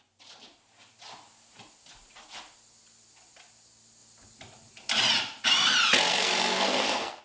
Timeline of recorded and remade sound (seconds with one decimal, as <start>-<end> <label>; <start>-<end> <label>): 0.0-6.1 recorded; 6.1-7.2 remade